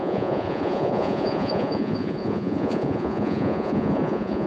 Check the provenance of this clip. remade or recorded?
remade